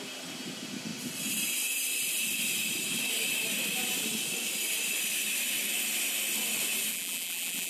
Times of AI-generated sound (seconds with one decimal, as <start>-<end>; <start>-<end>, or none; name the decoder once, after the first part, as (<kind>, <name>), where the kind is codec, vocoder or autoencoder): 6.9-7.7 (vocoder, BigVGAN v2)